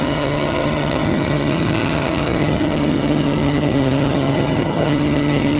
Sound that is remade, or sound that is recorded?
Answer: remade